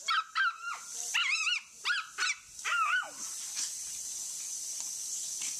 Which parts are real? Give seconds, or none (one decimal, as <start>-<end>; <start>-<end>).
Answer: 0.0-5.6